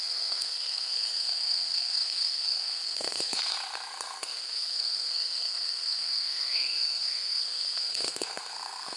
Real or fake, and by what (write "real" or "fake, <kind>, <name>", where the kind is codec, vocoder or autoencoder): fake, codec, SNAC